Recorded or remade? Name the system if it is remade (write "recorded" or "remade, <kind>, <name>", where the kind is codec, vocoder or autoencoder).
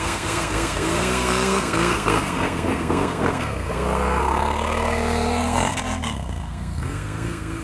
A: remade, codec, SNAC